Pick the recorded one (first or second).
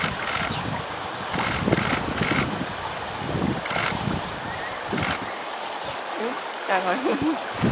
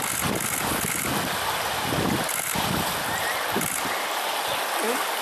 second